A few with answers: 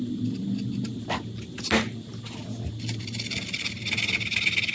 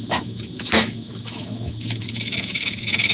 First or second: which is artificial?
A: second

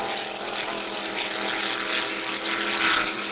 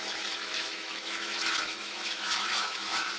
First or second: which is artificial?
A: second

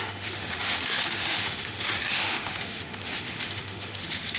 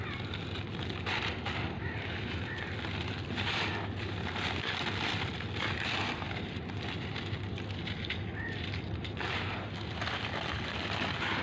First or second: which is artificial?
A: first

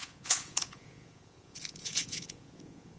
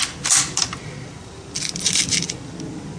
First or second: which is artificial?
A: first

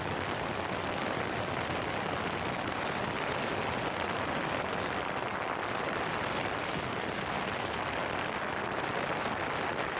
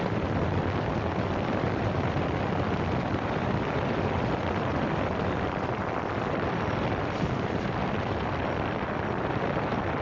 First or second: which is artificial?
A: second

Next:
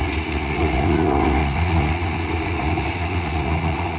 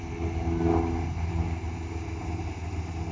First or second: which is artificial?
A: first